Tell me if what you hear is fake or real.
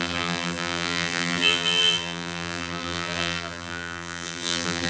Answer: fake